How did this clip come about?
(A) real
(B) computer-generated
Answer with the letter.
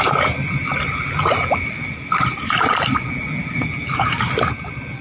A